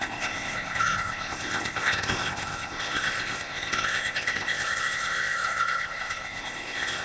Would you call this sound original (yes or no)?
no